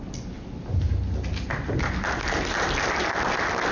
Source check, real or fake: real